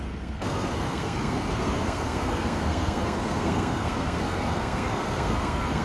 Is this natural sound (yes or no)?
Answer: no